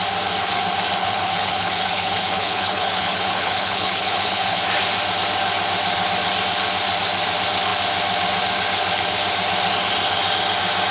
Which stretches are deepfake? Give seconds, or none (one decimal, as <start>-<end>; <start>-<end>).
1.0-4.6

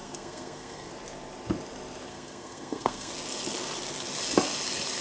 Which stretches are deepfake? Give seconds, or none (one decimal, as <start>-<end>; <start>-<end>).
0.0-0.9; 2.1-3.1

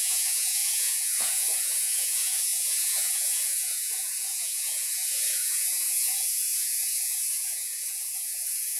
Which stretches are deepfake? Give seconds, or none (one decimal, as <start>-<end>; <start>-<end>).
0.0-8.8

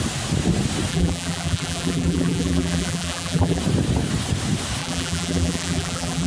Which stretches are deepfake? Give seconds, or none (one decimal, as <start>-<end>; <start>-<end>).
0.9-3.6; 4.8-6.3

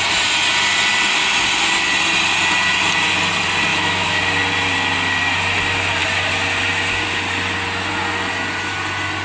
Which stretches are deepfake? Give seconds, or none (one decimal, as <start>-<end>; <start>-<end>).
3.7-4.2